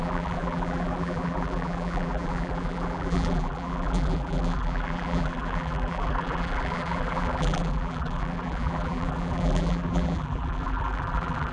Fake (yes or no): yes